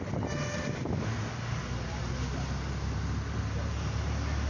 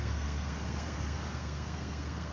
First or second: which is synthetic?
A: second